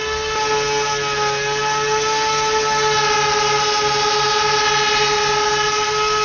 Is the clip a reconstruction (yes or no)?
no